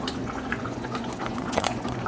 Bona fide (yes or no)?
no